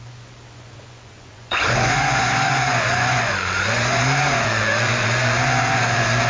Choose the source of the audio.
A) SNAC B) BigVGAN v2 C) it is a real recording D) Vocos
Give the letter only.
D